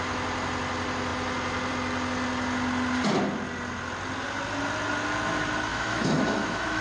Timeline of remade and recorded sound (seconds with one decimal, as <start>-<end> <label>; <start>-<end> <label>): 0.0-5.7 recorded; 5.7-6.8 remade